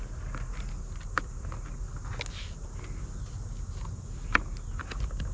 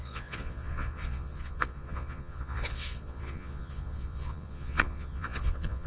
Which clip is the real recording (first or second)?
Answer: first